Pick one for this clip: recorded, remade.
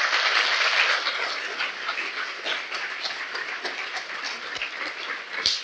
recorded